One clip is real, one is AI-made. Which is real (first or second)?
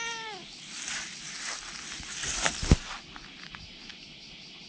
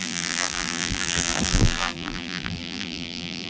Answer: first